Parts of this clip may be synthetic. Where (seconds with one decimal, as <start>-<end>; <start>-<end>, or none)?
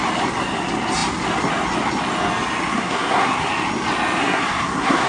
2.7-3.5; 4.2-5.1